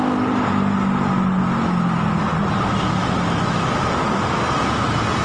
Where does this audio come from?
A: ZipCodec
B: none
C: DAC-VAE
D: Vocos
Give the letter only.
B